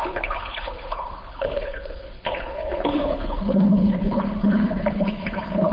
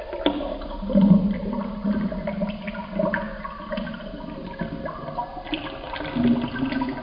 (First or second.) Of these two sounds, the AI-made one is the first